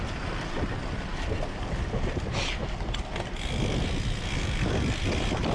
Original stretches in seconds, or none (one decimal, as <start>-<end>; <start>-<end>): 0.0-5.5